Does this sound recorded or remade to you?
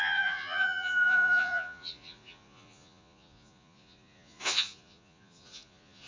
remade